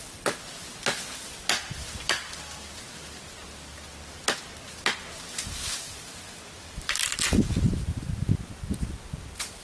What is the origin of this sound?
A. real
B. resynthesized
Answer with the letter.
A